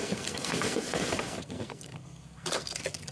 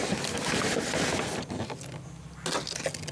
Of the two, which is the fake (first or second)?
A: first